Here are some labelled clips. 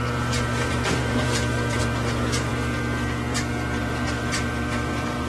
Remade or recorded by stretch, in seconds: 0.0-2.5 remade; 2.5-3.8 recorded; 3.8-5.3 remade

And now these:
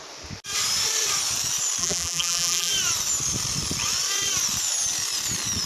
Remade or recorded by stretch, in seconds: 0.0-1.8 recorded; 1.8-2.7 remade; 2.7-5.7 recorded

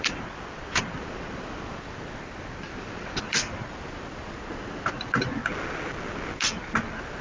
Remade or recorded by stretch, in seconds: 0.0-4.2 remade; 4.2-6.6 recorded; 6.6-7.2 remade

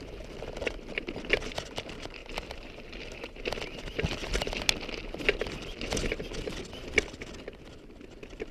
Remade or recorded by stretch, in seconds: 0.0-2.2 recorded; 2.2-3.4 remade; 3.4-8.5 recorded

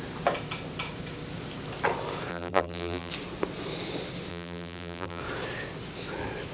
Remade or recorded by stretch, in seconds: 0.0-2.3 recorded; 2.3-3.1 remade; 3.1-4.3 recorded; 4.3-5.2 remade; 5.2-6.5 recorded